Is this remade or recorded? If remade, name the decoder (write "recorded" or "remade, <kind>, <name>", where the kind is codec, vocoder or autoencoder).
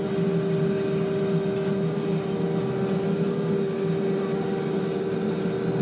recorded